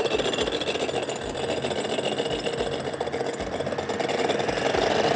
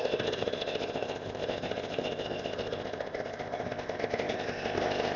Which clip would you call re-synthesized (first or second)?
second